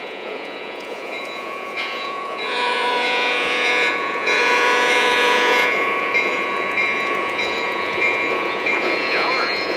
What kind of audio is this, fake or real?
fake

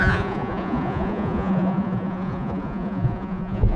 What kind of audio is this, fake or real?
fake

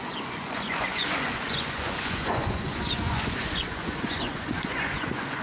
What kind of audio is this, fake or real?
fake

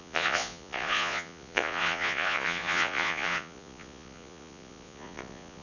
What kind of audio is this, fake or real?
fake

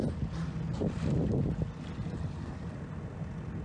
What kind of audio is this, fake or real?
real